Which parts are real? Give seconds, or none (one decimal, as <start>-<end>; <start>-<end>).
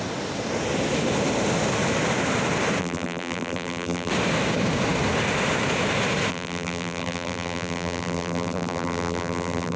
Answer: 0.0-2.8; 4.1-6.3